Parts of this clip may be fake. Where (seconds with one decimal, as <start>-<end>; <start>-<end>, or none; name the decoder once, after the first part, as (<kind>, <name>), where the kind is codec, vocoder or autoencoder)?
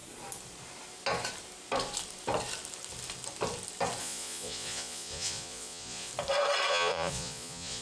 4.0-6.1 (vocoder, Vocos); 6.7-7.8